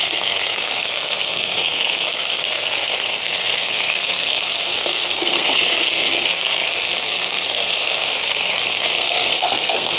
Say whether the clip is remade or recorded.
remade